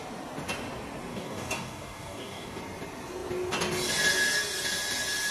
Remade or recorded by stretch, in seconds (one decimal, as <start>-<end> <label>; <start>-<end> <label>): 0.0-1.1 recorded; 1.1-2.6 remade; 2.6-5.3 recorded